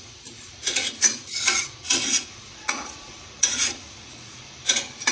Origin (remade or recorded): remade